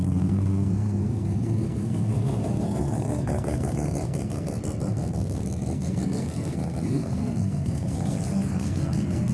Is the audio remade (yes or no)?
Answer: yes